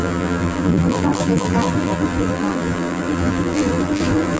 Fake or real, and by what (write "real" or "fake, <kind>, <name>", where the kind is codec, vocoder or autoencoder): fake, vocoder, BigVGAN v2